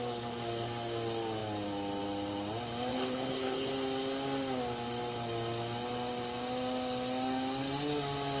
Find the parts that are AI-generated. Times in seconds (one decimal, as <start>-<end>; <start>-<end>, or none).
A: 2.9-3.7